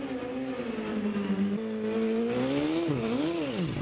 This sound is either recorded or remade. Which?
recorded